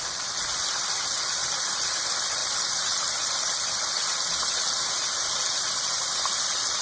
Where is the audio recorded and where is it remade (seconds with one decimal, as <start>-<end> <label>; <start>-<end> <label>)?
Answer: 0.0-6.8 recorded